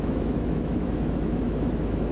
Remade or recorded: remade